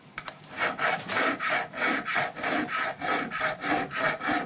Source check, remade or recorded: recorded